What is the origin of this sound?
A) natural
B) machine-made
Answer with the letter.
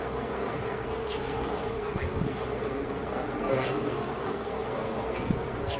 B